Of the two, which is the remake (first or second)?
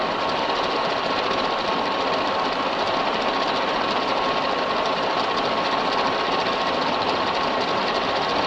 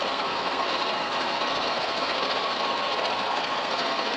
second